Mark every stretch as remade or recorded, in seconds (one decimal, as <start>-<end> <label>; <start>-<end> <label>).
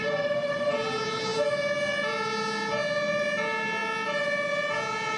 0.0-5.2 recorded